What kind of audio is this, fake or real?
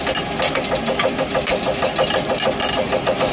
real